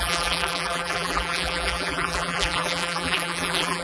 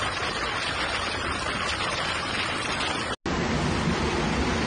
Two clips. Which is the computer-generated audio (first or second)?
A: first